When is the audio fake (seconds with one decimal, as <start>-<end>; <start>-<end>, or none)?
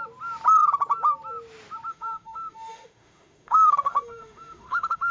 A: 1.9-5.1